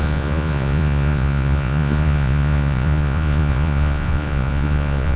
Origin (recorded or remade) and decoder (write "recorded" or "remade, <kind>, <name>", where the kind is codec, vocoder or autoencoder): remade, vocoder, Vocos